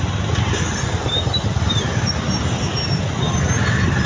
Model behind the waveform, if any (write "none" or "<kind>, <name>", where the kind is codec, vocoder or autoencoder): none